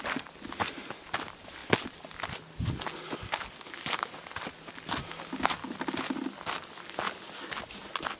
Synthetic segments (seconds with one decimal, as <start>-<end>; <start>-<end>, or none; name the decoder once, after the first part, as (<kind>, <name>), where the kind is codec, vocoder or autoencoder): none